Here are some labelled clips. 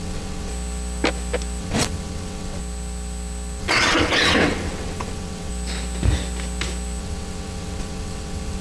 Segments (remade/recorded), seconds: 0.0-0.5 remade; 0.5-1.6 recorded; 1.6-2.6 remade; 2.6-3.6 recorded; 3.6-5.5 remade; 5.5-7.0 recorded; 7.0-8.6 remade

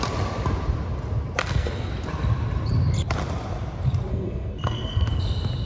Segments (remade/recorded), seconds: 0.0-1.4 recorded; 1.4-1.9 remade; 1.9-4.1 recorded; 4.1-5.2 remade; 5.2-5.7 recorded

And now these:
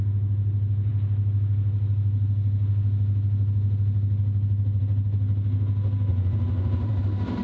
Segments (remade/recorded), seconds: 0.0-6.1 recorded; 6.1-7.0 remade; 7.0-7.4 recorded

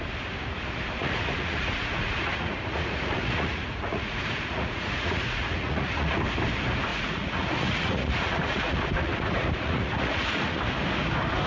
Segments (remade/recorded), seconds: 0.0-1.0 recorded; 1.0-6.2 remade; 6.2-6.9 recorded; 6.9-10.6 remade; 10.6-11.5 recorded